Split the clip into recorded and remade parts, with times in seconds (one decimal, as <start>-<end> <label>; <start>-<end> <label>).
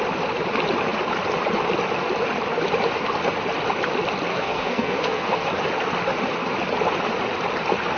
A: 0.0-4.3 recorded; 4.3-5.5 remade; 5.5-8.0 recorded